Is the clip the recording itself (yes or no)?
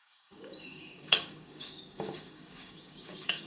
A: no